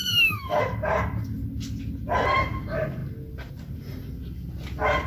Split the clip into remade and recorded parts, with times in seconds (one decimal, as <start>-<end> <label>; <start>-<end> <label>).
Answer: 0.0-0.6 remade; 0.6-5.1 recorded

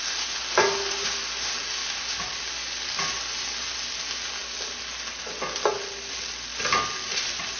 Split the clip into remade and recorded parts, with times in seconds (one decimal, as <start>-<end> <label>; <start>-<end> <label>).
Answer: 0.0-7.6 recorded

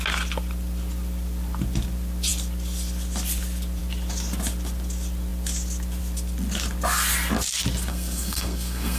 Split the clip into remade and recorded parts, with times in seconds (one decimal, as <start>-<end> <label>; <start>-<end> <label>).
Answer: 0.0-7.9 recorded; 7.9-9.0 remade